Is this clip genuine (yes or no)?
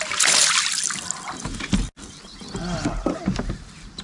yes